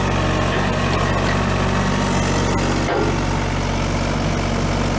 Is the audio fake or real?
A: real